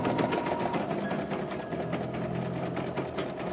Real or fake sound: real